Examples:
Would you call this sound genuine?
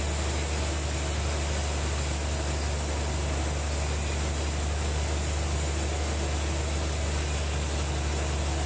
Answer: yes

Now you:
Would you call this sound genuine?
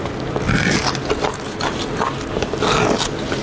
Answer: yes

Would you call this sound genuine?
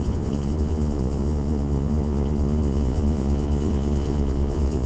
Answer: no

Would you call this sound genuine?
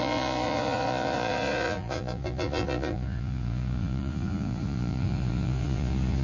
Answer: no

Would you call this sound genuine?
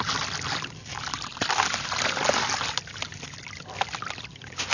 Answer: yes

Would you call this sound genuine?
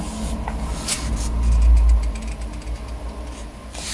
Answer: yes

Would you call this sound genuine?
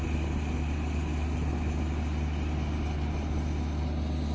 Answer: yes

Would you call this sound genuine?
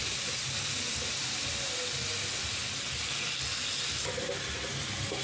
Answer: yes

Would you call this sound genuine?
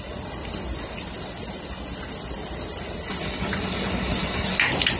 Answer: yes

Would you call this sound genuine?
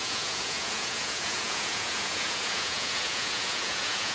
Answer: no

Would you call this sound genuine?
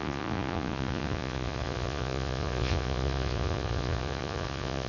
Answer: no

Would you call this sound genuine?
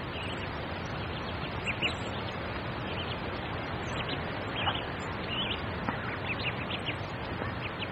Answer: yes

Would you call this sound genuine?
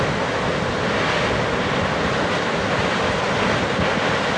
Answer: yes